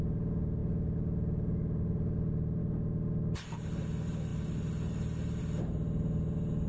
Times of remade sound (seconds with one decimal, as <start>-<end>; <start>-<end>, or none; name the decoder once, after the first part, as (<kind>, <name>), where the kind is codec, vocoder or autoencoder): none